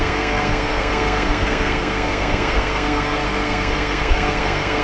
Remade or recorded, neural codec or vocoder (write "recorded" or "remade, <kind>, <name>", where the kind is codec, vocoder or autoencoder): remade, codec, SNAC